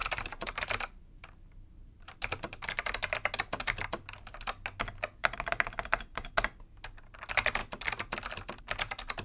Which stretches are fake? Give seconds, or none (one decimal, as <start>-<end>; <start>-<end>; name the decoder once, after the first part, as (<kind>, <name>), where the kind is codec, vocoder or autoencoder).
0.0-2.7 (vocoder, BigVGAN v2); 5.2-6.3